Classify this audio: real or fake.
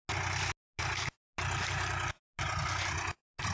real